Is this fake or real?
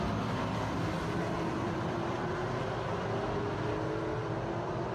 real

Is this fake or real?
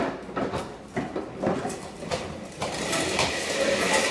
real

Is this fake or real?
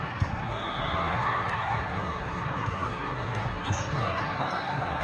fake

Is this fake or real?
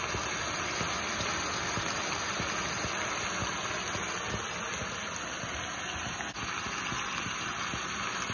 real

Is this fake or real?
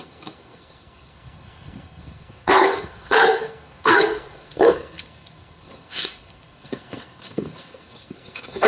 fake